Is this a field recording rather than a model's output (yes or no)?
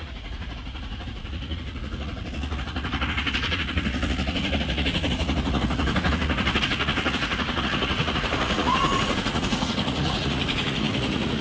no